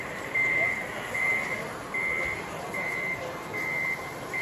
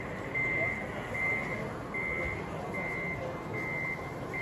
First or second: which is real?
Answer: second